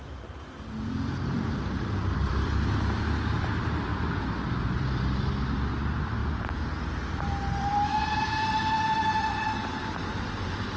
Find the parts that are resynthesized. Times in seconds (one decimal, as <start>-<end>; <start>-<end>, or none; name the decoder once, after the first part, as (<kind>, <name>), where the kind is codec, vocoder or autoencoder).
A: 0.0-3.9 (vocoder, BigVGAN v2); 4.4-10.8